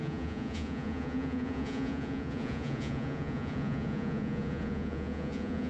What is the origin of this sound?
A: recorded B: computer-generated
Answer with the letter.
B